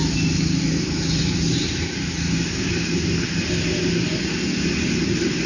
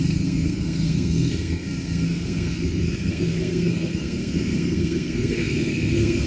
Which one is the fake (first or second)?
second